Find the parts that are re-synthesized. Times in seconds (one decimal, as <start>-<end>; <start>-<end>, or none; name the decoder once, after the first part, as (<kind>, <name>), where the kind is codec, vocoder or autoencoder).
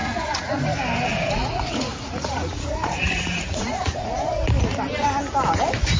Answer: 0.0-0.6 (vocoder, Vocos); 1.1-4.4